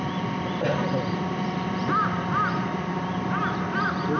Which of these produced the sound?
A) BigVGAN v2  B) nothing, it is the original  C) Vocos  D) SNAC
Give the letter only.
A